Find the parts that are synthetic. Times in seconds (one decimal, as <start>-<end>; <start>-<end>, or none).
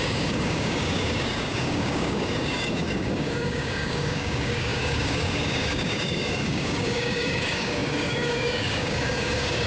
0.0-9.7